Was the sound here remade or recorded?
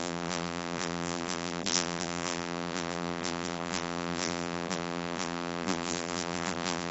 remade